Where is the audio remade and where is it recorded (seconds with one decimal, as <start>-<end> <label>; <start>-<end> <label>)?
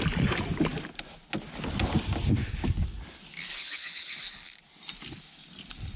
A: 0.0-3.5 recorded; 3.5-4.6 remade; 4.6-6.0 recorded